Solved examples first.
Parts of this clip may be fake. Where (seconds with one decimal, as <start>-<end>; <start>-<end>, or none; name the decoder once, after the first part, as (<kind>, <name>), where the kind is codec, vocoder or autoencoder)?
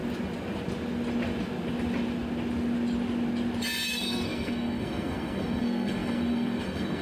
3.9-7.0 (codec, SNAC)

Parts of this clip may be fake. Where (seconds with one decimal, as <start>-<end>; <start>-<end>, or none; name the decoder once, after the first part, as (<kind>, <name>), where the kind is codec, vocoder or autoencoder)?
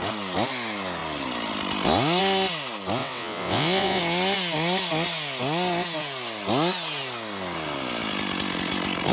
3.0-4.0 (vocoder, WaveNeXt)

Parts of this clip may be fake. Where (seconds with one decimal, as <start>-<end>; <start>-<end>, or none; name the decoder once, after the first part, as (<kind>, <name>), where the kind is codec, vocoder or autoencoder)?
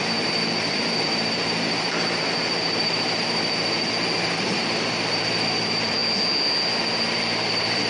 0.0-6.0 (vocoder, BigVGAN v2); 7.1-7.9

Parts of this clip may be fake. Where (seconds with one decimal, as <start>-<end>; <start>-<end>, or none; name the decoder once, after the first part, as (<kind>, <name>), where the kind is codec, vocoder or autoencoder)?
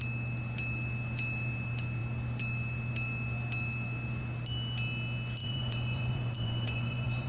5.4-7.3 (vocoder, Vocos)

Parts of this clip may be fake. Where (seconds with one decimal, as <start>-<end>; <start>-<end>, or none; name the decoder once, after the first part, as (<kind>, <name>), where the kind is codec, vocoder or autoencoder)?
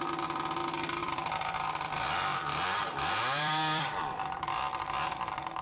1.0-4.4 (vocoder, BigVGAN v2)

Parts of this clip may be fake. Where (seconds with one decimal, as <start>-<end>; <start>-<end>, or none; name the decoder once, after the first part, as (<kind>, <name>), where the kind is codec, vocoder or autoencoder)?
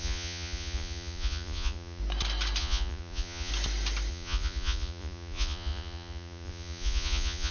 0.0-2.0 (vocoder, Vocos); 2.6-3.5; 4.1-7.5